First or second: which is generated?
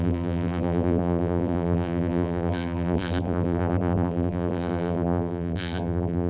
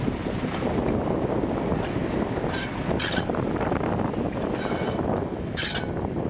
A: first